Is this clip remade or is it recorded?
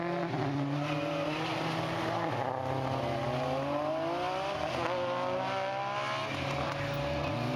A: recorded